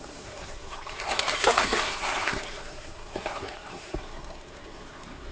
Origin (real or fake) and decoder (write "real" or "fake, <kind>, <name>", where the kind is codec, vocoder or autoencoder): fake, codec, SNAC